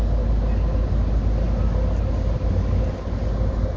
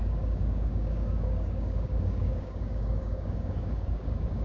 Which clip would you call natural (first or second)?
first